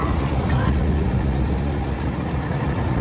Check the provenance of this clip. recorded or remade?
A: remade